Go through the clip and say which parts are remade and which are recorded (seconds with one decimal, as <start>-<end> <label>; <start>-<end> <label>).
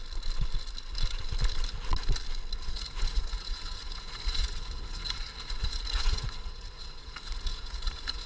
0.0-2.6 recorded; 2.6-8.3 remade